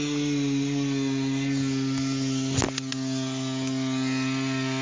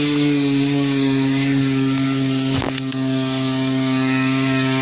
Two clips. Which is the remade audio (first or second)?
second